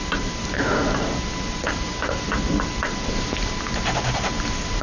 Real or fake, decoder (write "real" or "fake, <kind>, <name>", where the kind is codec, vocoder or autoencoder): real